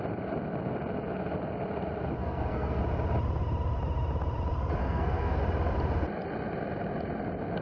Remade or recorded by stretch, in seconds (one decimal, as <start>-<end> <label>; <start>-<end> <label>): 0.0-2.2 recorded; 2.2-2.8 remade; 2.8-4.8 recorded; 4.8-5.4 remade; 5.4-7.6 recorded

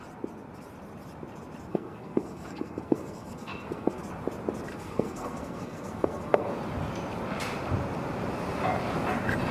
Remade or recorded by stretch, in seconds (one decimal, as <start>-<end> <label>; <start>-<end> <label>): 0.0-1.7 recorded; 1.7-4.0 remade; 4.0-4.7 recorded; 4.7-6.5 remade; 6.5-9.5 recorded

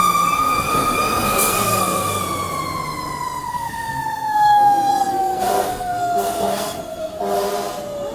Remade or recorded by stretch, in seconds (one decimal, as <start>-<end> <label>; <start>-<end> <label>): 0.0-0.7 recorded; 0.7-2.2 remade; 2.2-3.4 recorded; 3.4-7.2 remade; 7.2-8.1 recorded